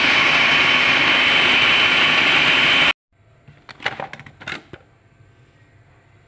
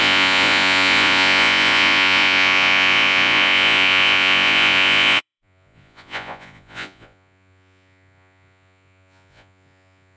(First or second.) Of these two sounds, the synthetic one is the second